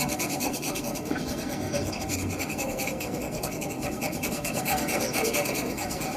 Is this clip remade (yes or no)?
yes